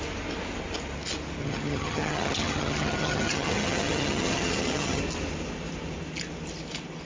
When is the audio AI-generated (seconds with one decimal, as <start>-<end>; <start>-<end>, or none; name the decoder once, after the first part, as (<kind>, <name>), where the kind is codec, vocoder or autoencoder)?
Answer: 1.4-5.0 (vocoder, HiFi-GAN)